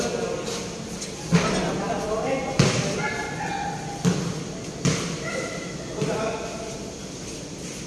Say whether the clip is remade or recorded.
recorded